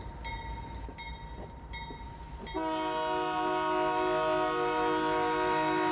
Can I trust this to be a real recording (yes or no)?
yes